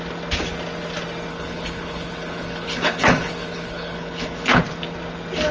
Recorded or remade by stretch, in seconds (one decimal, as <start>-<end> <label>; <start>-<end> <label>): 0.0-1.3 recorded; 1.3-4.6 remade; 4.6-5.5 recorded